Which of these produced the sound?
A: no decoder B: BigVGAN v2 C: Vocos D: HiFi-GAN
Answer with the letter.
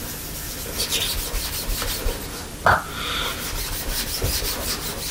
A